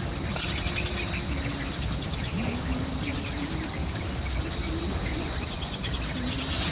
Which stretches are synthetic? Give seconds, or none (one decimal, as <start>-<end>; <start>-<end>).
5.1-5.9